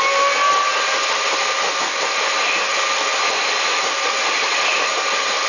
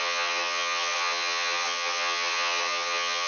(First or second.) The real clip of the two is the first